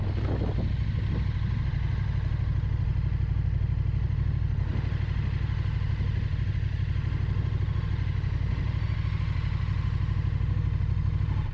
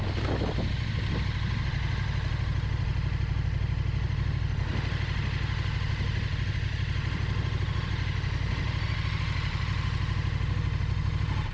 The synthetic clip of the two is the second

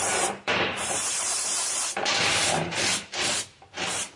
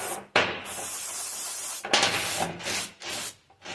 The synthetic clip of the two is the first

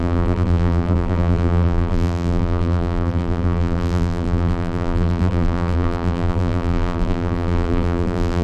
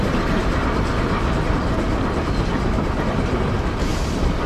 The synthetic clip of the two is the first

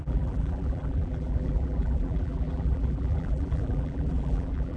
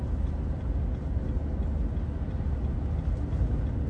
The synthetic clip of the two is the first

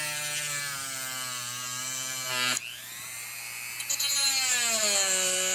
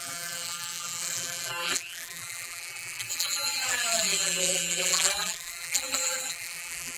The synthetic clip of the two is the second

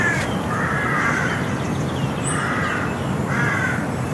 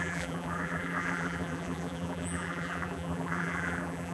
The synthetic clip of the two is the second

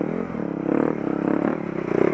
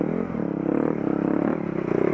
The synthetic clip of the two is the second